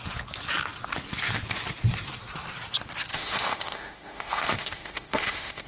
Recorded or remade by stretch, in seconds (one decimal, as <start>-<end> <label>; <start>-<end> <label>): 0.0-3.1 recorded; 3.1-5.7 remade